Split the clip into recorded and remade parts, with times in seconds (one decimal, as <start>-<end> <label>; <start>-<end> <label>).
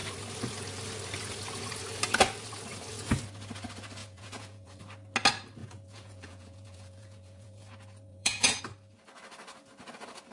0.0-4.0 recorded; 4.0-4.8 remade; 4.8-5.6 recorded; 5.6-7.6 remade; 7.6-8.1 recorded; 8.1-8.6 remade; 8.6-10.3 recorded